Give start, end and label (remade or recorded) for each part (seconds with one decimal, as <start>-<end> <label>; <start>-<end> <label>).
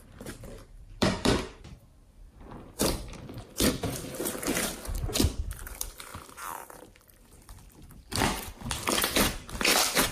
0.0-10.1 remade